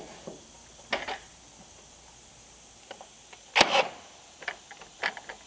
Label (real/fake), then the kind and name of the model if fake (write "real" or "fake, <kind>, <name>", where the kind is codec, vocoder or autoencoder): real